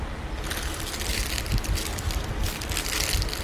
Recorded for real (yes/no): yes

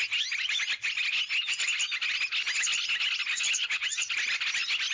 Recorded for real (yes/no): yes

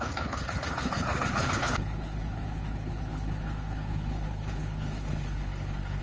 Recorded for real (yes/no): no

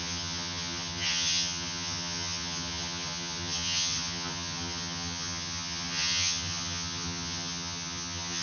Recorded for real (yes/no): no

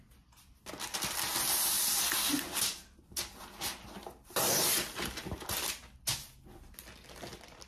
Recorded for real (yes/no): yes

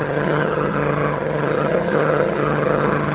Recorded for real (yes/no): no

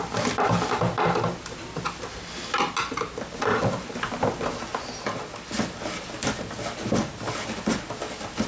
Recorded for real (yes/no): yes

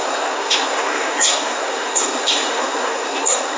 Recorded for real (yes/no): no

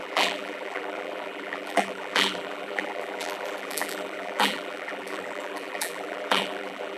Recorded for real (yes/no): no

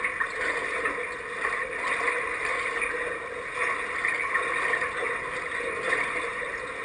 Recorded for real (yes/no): yes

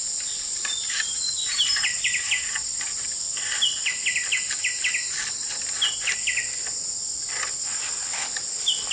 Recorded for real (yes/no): yes